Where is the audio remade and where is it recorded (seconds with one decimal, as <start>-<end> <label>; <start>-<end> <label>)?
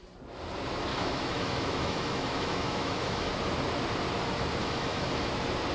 0.0-0.9 recorded; 0.9-3.3 remade; 3.3-4.6 recorded; 4.6-5.3 remade; 5.3-5.7 recorded